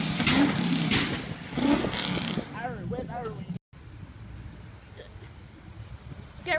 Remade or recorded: recorded